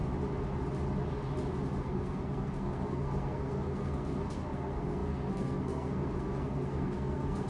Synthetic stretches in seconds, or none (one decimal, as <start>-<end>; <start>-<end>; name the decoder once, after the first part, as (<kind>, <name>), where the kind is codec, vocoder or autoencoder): 1.8-7.5 (codec, SNAC)